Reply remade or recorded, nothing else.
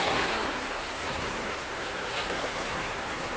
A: remade